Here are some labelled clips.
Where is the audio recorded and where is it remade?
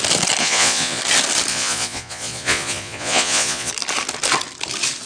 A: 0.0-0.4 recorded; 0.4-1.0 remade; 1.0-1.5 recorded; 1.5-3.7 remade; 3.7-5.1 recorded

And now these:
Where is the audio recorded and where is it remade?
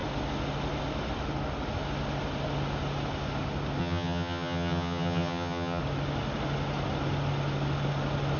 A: 0.0-3.8 recorded; 3.8-5.8 remade; 5.8-8.4 recorded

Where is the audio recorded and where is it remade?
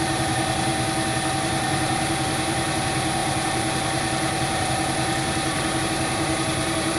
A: 0.0-0.7 remade; 0.7-1.3 recorded; 1.3-7.0 remade